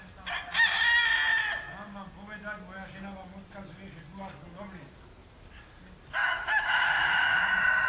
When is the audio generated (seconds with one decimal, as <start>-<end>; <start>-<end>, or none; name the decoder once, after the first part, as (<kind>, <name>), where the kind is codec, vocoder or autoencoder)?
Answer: 6.2-7.4 (autoencoder, DAC-VAE)